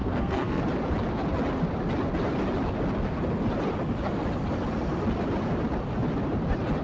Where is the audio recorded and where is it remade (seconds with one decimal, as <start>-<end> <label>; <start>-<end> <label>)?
0.0-0.6 remade; 0.6-6.8 recorded